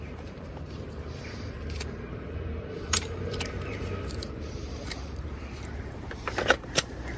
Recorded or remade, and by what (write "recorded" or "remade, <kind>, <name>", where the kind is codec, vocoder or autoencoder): remade, vocoder, BigVGAN v2